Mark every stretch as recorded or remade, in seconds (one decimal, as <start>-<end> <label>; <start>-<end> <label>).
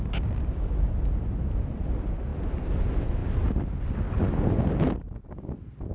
0.0-5.9 recorded